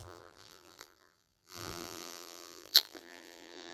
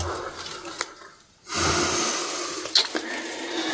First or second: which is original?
second